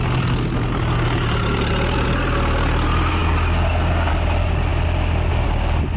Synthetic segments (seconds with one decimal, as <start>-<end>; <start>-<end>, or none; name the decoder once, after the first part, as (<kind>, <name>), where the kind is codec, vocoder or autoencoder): none